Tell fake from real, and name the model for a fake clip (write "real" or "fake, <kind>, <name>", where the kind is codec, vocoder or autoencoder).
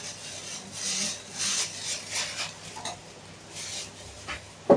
real